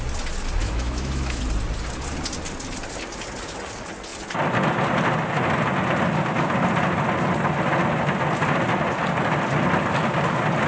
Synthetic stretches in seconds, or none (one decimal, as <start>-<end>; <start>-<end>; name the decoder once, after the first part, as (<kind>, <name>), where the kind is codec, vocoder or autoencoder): 0.6-1.4 (autoencoder, DAC-VAE)